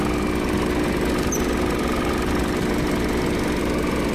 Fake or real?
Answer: real